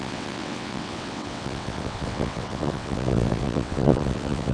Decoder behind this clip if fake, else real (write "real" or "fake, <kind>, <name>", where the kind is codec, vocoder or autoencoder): fake, vocoder, WaveNeXt